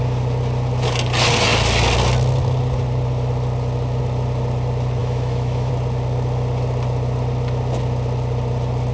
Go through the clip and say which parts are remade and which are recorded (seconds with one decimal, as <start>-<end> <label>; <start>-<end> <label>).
0.0-5.0 recorded; 5.0-5.7 remade; 5.7-8.9 recorded